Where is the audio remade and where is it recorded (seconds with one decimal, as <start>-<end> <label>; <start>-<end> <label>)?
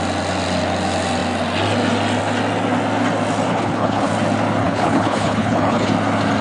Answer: 0.0-3.5 recorded; 3.5-4.1 remade; 4.1-4.6 recorded; 4.6-5.9 remade; 5.9-6.4 recorded